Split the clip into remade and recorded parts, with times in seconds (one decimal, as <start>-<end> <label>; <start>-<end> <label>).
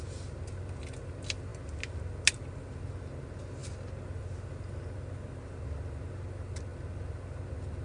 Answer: 0.0-7.8 recorded